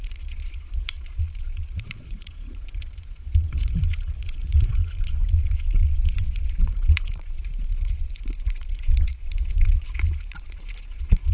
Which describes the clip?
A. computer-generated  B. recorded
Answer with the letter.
A